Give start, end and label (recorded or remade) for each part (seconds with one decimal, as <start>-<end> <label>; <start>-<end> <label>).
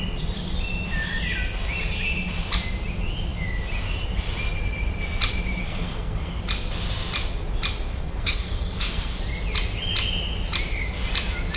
0.0-5.6 recorded; 5.6-6.4 remade; 6.4-7.9 recorded; 7.9-9.2 remade; 9.2-11.6 recorded